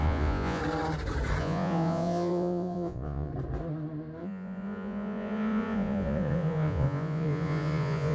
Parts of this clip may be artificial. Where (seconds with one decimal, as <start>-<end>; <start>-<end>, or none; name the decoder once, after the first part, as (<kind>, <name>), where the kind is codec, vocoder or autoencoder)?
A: 0.0-0.6 (vocoder, Vocos); 1.4-3.3; 4.2-8.1